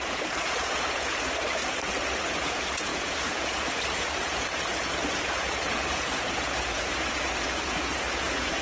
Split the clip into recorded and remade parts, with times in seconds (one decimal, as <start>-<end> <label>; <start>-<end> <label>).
0.0-1.6 remade; 1.6-2.2 recorded; 2.2-8.6 remade